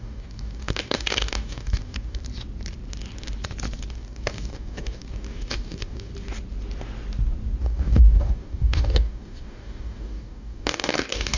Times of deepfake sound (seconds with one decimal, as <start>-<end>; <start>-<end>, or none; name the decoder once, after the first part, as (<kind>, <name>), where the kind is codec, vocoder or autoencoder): 0.0-2.2 (codec, DAC); 3.9-6.1; 7.6-11.4